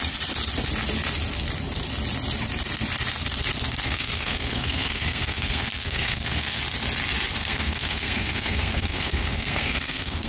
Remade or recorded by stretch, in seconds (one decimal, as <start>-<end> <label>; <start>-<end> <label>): 0.0-3.8 recorded; 3.8-6.6 remade; 6.6-7.4 recorded; 7.4-10.3 remade